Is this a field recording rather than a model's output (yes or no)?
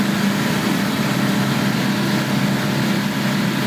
yes